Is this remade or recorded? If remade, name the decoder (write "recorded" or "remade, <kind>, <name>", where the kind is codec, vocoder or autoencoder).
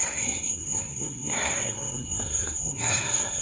remade, codec, SNAC